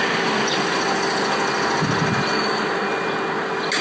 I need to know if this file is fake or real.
real